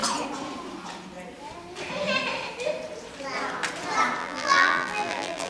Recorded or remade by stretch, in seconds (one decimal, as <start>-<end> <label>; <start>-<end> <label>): 0.0-4.2 recorded; 4.2-5.5 remade